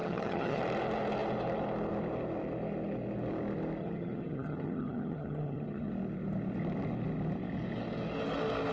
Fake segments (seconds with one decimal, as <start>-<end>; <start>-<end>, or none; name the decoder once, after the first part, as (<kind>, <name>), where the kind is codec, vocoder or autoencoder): 0.0-0.6 (vocoder, HiFi-GAN); 3.8-5.9